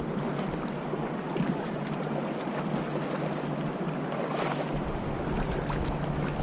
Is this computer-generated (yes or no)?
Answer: no